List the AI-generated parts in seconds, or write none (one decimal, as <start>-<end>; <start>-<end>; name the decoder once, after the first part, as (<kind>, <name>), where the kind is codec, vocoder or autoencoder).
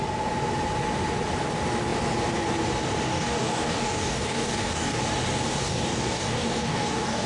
3.1-5.0 (codec, DAC); 5.6-7.3